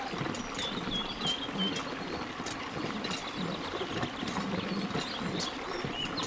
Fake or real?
real